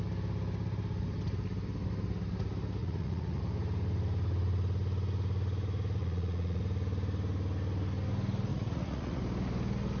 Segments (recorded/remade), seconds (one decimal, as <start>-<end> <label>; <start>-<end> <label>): 0.0-2.8 recorded; 2.8-3.4 remade; 3.4-6.0 recorded; 6.0-6.6 remade; 6.6-8.5 recorded; 8.5-9.2 remade; 9.2-10.0 recorded

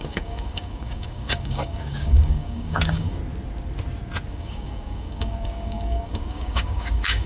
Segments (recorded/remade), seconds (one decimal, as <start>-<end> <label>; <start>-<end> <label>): 0.0-3.2 remade; 3.2-4.3 recorded; 4.3-7.3 remade

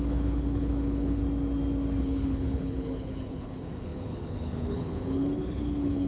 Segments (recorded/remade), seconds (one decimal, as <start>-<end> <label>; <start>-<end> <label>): 0.0-1.2 remade; 1.2-2.0 recorded; 2.0-6.1 remade

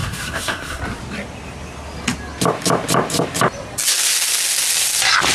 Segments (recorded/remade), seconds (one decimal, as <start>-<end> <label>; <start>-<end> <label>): 0.0-0.8 remade; 0.8-5.3 recorded

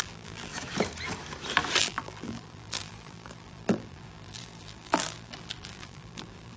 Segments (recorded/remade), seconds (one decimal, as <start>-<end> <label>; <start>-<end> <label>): 0.0-0.5 remade; 0.5-1.8 recorded; 1.8-6.6 remade